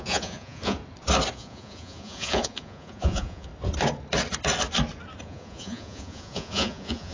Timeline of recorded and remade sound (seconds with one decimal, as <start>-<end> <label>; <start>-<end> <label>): 0.0-0.8 remade; 0.8-1.3 recorded; 1.3-3.5 remade; 3.5-5.2 recorded; 5.2-7.1 remade